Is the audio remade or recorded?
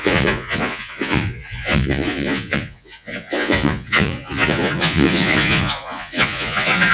remade